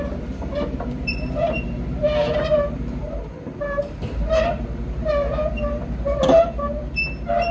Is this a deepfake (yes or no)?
yes